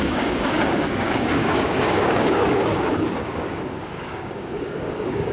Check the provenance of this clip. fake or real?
fake